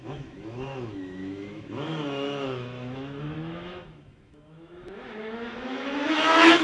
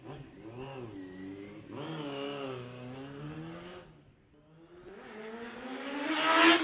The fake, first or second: first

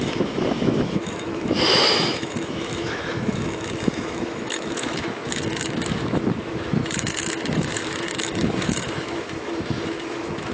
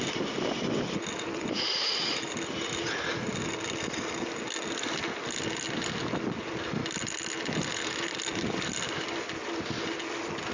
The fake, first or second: first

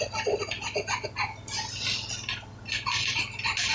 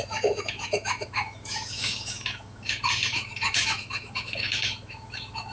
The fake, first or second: second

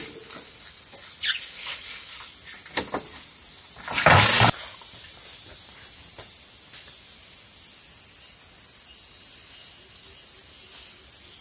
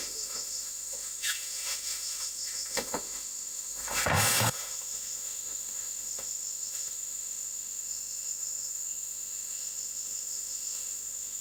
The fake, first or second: second